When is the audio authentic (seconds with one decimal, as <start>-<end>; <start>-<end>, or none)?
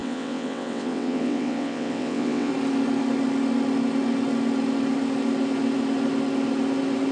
2.5-7.1